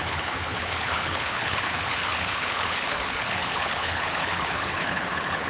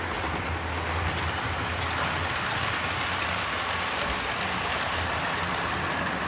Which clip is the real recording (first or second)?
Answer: second